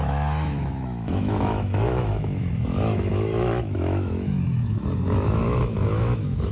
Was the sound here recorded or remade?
remade